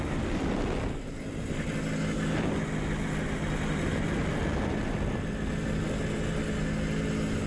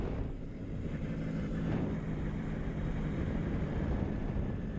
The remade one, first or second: second